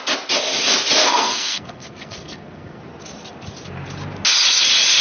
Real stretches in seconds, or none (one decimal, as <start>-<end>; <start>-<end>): 0.0-1.0; 2.8-5.0